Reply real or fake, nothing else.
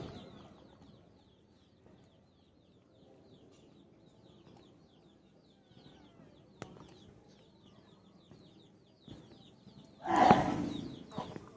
real